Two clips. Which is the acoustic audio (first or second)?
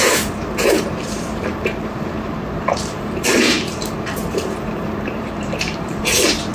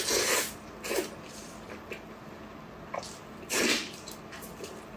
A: second